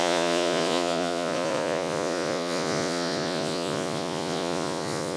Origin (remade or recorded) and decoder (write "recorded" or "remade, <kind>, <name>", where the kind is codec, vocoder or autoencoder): remade, vocoder, Vocos